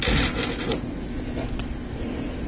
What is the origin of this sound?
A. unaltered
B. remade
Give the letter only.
A